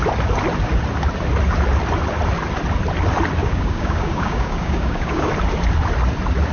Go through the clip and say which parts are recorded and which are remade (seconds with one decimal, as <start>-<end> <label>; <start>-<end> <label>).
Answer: 0.0-3.4 recorded; 3.4-5.3 remade; 5.3-6.5 recorded

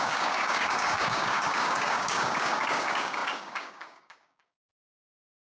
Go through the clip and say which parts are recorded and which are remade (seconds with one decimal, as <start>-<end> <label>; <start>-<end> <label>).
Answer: 0.0-5.4 remade

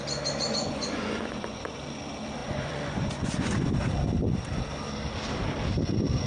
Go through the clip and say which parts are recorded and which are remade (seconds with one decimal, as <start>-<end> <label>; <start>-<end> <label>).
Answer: 0.0-0.4 recorded; 0.4-1.8 remade; 1.8-2.4 recorded; 2.4-3.7 remade; 3.7-6.3 recorded

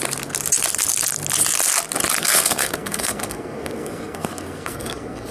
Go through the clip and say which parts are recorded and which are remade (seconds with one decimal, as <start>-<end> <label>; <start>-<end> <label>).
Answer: 0.0-2.2 recorded; 2.2-5.3 remade

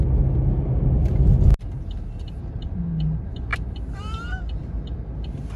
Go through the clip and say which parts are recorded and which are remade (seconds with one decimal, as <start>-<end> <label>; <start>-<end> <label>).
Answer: 0.0-5.6 recorded

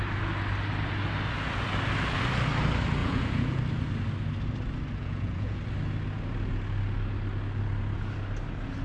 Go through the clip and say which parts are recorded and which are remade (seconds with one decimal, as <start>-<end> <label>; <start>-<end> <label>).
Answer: 0.0-3.0 recorded; 3.0-3.6 remade; 3.6-5.0 recorded; 5.0-5.6 remade; 5.6-8.8 recorded